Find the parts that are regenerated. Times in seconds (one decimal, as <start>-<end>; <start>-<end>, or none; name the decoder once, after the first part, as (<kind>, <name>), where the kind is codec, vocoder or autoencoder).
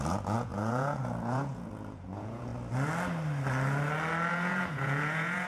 0.0-2.5 (vocoder, Vocos); 4.3-5.5